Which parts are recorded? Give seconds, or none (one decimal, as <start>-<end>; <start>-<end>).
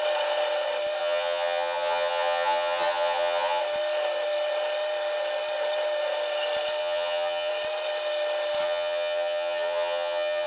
0.0-1.0; 3.6-6.8; 7.5-8.6